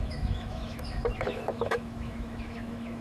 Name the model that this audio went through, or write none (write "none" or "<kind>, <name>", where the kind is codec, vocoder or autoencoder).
autoencoder, DAC-VAE